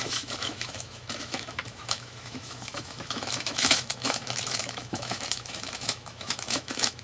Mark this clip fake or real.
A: fake